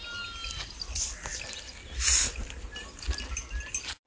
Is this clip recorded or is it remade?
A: recorded